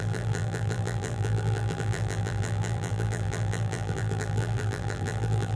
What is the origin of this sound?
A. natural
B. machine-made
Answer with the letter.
B